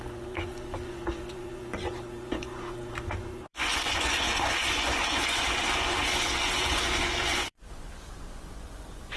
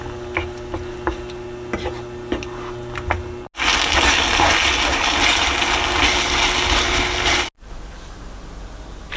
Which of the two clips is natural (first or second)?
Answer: second